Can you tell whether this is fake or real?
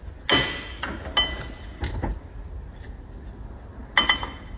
real